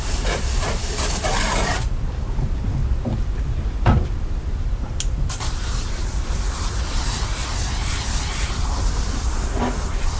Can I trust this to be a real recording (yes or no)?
no